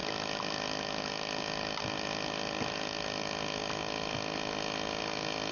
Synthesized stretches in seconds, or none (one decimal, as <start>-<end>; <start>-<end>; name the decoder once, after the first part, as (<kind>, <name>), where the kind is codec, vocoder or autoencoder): none